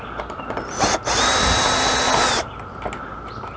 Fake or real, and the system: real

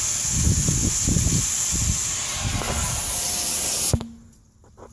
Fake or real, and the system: real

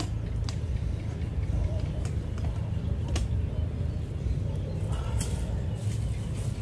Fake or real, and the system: real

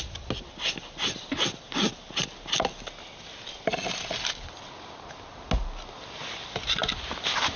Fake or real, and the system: real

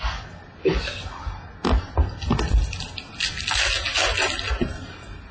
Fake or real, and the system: real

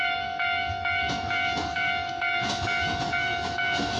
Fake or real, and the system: fake, autoencoder, DAC-VAE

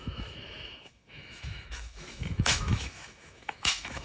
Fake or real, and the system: fake, autoencoder, DAC-VAE